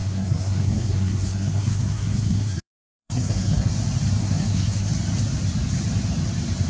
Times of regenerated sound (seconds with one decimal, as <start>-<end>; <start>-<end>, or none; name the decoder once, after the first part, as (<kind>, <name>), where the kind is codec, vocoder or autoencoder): 0.0-3.7 (codec, SNAC); 4.2-4.9